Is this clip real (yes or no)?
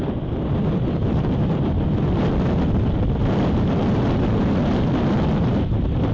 no